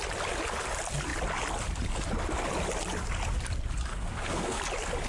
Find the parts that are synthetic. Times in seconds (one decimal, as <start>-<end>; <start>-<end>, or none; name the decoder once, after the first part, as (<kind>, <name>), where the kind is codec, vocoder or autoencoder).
3.9-4.6 (codec, SNAC)